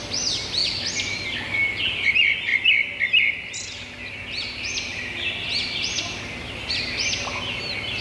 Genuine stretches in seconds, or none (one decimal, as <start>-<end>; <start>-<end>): 0.0-8.0